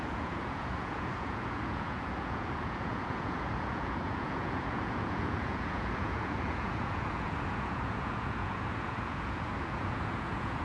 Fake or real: fake